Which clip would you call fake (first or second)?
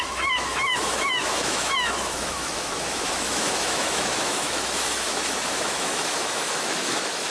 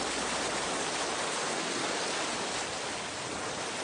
first